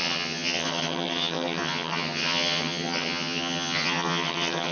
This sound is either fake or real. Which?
fake